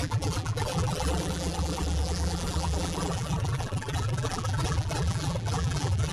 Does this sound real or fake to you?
fake